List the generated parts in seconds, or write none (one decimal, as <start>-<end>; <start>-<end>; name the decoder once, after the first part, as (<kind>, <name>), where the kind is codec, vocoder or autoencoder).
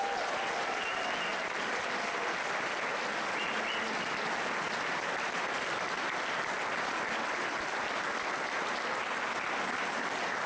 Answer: 1.3-2.0 (vocoder, BigVGAN v2)